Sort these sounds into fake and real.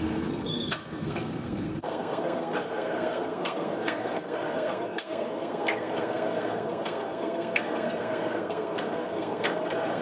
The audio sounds fake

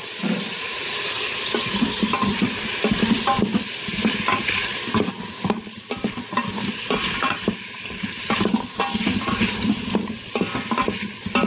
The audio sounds real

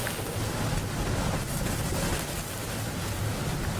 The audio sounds real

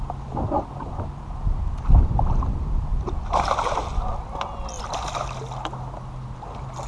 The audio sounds real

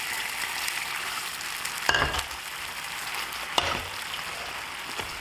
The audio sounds real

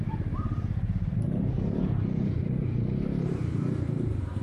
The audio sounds fake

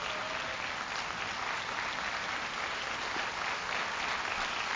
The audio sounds real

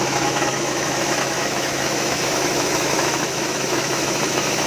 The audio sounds fake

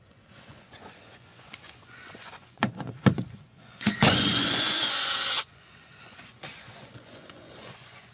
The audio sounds fake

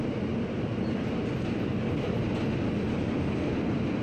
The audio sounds real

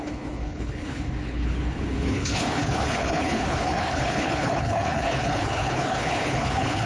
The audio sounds fake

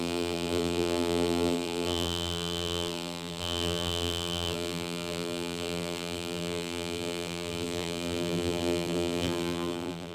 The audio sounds fake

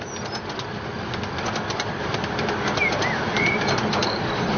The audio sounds real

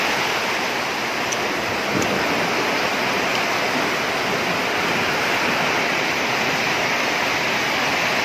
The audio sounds real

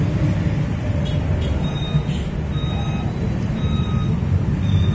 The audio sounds real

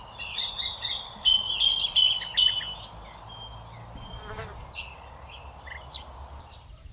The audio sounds real